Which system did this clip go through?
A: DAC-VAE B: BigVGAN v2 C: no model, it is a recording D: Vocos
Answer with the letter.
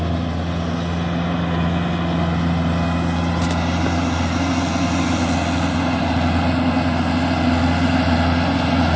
C